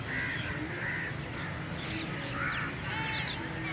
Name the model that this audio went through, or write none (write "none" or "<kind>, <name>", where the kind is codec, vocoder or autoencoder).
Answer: none